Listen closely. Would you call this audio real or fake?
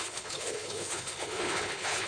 fake